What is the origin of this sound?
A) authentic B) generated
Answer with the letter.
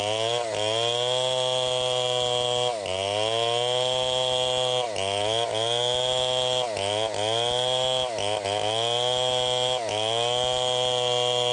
A